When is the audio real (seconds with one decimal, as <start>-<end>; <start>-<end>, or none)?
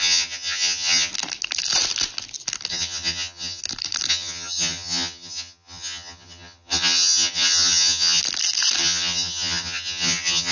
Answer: 1.1-2.7; 3.6-4.1; 8.2-8.8